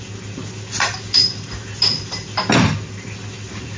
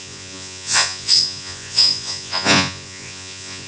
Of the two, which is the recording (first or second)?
first